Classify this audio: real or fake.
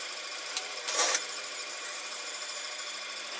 fake